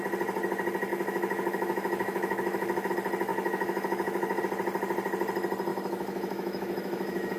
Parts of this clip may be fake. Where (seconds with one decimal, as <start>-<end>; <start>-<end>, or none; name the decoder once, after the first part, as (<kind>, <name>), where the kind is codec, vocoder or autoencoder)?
0.9-2.9 (autoencoder, DAC-VAE); 3.3-4.4; 5.7-7.4